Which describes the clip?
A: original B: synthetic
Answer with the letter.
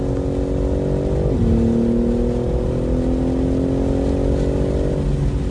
A